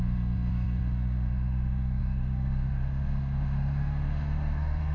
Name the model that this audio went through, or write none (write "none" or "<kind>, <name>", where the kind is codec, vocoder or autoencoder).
autoencoder, DAC-VAE